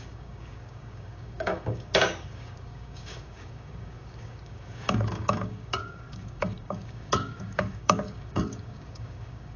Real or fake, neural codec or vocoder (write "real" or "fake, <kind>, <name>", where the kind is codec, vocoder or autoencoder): fake, codec, DAC